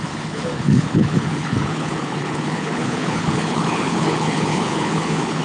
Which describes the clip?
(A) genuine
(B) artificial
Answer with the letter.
B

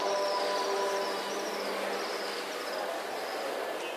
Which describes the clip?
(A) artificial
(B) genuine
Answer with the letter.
B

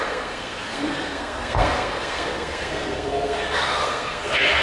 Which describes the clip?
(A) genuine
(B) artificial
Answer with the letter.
B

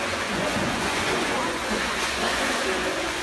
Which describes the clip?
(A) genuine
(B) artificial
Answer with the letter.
B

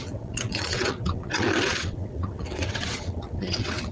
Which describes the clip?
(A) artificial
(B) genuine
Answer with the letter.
A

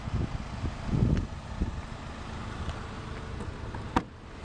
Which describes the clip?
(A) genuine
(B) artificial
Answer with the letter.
A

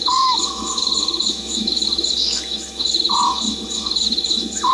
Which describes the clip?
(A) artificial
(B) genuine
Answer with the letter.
A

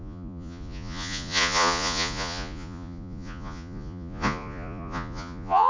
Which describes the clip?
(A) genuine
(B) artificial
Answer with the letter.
B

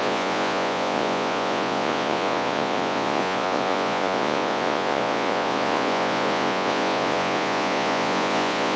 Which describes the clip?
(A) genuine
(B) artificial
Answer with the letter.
B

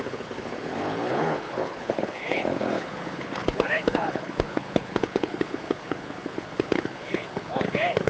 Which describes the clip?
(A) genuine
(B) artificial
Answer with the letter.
B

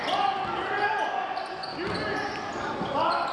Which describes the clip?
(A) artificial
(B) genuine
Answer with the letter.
B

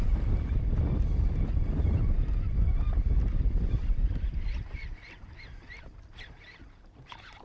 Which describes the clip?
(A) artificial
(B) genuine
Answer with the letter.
B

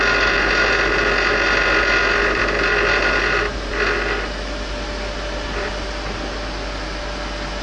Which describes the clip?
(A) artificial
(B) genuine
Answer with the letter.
B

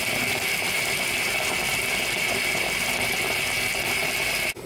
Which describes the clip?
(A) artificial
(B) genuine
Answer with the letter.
B